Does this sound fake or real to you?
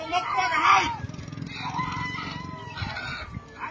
real